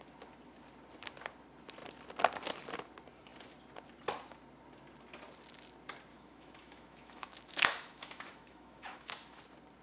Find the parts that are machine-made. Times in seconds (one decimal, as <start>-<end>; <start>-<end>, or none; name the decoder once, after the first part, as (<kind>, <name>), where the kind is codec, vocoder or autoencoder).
6.1-9.4 (autoencoder, DAC-VAE)

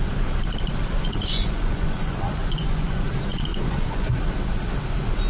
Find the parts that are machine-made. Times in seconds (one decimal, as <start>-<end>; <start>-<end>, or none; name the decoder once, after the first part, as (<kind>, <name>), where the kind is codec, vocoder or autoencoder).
1.3-3.0 (vocoder, Vocos); 3.5-4.2

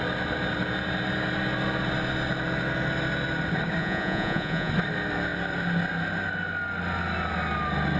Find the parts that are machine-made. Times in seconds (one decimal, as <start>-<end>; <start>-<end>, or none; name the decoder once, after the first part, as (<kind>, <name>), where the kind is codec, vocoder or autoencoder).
3.8-4.7 (vocoder, Vocos)

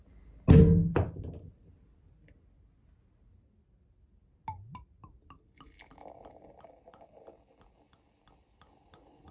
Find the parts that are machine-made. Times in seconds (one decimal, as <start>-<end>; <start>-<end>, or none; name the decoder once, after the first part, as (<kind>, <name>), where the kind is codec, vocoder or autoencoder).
none

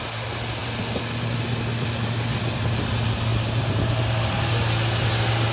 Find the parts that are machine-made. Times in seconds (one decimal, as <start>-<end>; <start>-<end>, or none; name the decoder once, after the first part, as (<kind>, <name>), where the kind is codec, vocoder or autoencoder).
none

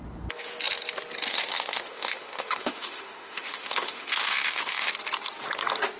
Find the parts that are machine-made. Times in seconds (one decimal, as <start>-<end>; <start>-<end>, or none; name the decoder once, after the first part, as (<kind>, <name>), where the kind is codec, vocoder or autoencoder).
1.3-4.9 (autoencoder, DAC-VAE)

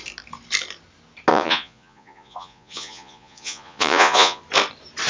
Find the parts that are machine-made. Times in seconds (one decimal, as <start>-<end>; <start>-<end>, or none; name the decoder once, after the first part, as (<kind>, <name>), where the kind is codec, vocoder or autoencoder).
1.3-4.4 (vocoder, Vocos)

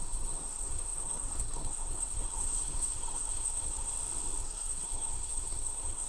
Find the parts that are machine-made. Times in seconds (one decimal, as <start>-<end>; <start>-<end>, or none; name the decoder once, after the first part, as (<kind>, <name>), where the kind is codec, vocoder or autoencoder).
0.0-3.9 (codec, SNAC); 4.4-6.1